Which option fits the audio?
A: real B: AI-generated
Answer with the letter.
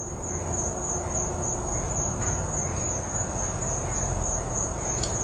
A